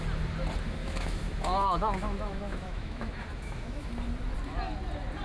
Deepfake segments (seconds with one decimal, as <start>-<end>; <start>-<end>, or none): 0.8-3.9